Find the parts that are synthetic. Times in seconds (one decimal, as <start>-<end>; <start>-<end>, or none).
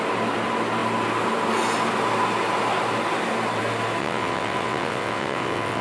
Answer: 4.0-5.8